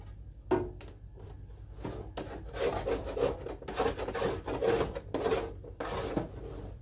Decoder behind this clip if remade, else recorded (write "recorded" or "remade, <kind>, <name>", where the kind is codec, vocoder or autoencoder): recorded